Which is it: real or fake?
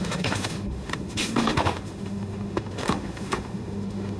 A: fake